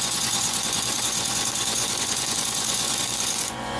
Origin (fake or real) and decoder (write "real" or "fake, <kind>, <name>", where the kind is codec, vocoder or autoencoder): fake, vocoder, Vocos